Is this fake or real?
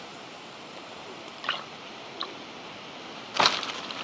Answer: fake